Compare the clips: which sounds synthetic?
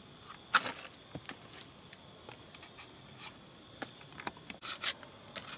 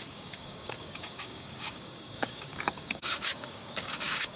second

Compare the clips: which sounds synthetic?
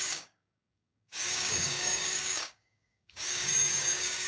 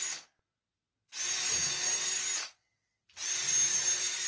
first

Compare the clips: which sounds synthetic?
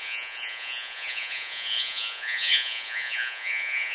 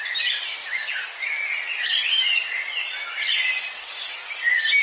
first